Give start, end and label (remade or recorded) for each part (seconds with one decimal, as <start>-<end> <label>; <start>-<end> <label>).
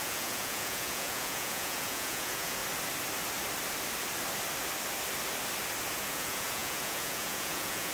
0.0-2.6 remade; 2.6-6.0 recorded; 6.0-7.9 remade